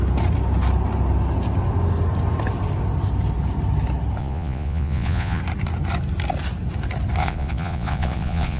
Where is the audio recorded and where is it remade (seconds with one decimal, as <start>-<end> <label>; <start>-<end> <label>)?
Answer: 0.0-4.2 recorded; 4.2-5.4 remade; 5.4-7.2 recorded; 7.2-8.6 remade